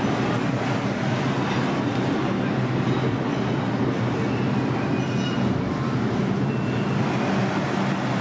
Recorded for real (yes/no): yes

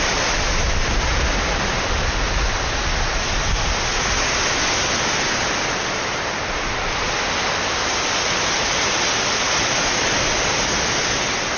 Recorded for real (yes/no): yes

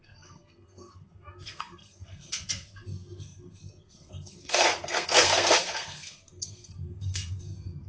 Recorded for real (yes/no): no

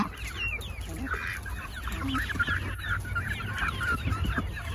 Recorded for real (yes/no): yes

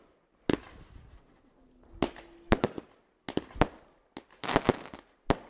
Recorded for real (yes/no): yes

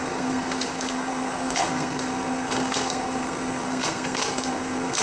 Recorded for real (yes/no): no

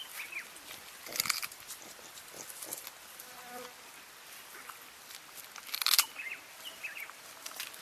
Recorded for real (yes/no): yes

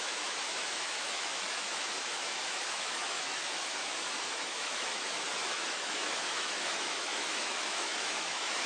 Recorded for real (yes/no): no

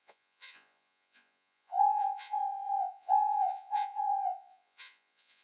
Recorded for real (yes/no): no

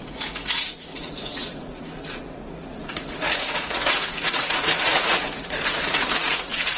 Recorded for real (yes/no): no